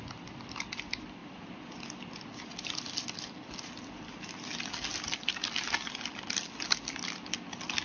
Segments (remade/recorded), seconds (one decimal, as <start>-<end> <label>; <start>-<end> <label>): 0.0-7.8 recorded